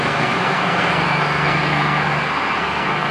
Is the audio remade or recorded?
remade